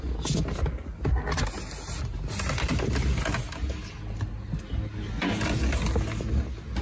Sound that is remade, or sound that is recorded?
recorded